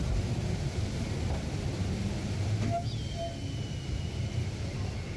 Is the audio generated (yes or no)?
no